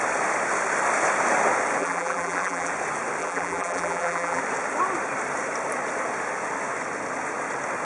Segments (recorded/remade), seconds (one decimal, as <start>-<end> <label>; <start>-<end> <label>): 0.0-1.8 recorded; 1.8-2.7 remade; 2.7-3.2 recorded; 3.2-4.4 remade; 4.4-7.8 recorded